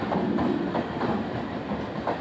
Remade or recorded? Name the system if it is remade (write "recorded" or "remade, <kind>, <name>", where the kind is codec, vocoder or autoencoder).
recorded